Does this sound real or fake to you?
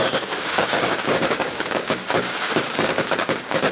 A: fake